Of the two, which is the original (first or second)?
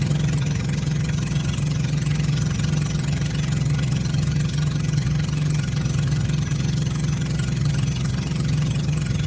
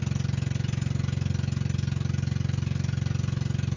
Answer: second